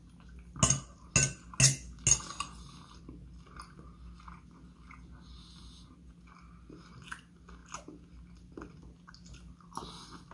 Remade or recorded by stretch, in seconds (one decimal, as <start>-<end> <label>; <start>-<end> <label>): 0.0-10.3 recorded